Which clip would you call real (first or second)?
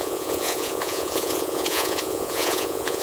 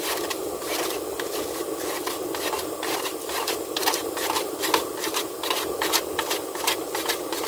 second